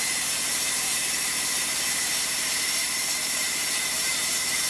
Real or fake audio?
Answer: fake